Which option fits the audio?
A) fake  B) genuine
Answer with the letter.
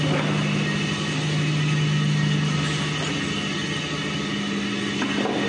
B